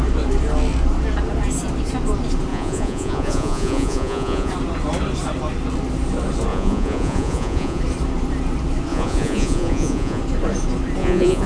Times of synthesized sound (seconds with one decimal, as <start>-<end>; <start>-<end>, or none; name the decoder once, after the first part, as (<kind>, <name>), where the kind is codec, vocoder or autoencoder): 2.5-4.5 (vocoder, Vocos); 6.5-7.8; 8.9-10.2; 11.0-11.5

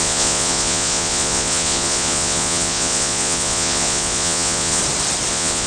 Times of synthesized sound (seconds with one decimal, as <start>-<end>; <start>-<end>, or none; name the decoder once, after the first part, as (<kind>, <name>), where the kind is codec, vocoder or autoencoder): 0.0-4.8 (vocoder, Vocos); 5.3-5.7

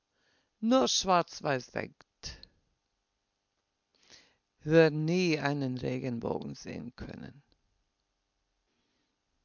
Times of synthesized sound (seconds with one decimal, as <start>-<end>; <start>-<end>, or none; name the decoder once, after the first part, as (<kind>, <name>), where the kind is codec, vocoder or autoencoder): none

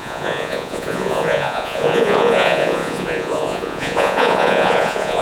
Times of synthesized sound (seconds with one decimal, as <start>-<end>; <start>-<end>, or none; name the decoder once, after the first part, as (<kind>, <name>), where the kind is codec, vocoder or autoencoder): 0.0-5.2 (vocoder, Vocos)